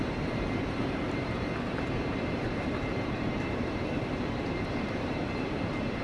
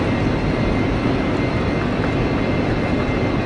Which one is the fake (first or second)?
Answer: first